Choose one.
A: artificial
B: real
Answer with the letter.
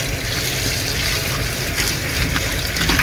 B